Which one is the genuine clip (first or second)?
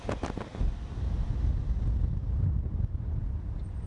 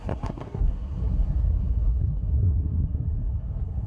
first